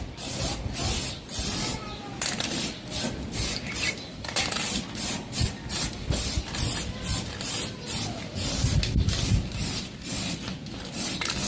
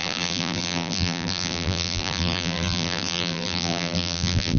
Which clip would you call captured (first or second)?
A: first